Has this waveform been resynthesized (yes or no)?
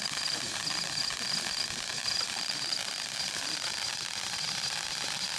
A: no